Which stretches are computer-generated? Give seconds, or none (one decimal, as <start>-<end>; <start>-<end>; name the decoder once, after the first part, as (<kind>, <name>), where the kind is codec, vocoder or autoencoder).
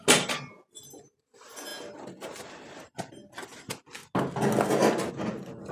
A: none